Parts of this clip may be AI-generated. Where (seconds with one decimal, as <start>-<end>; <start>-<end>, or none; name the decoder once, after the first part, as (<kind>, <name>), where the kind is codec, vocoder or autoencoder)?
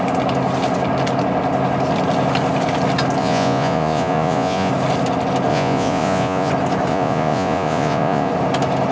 3.2-4.7 (vocoder, Vocos); 5.5-6.5; 6.9-8.3